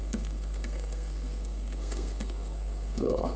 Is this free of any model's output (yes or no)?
no